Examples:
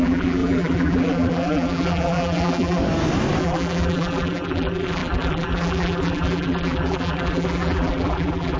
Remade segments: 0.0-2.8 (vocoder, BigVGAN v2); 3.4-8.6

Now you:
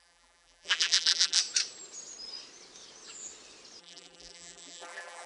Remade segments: 0.0-1.4 (vocoder, BigVGAN v2); 3.8-5.3

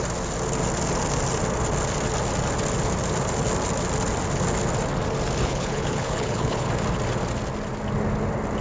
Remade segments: 5.4-6.7 (codec, HILCodec)

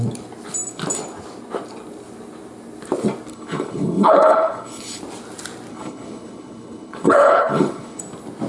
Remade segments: 3.3-5.0 (codec, HILCodec); 5.7-8.0

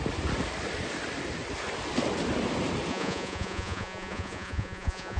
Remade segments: 2.9-5.2 (vocoder, Vocos)

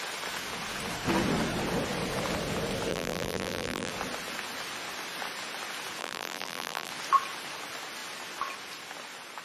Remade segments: 2.9-3.9 (vocoder, BigVGAN v2); 6.0-6.9

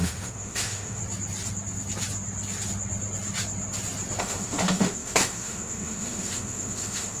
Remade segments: 0.0-1.0 (autoencoder, DAC-VAE); 4.2-7.2